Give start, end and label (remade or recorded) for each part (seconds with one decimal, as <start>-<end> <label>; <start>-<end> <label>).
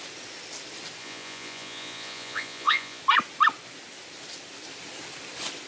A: 0.0-1.0 recorded; 1.0-3.0 remade; 3.0-5.7 recorded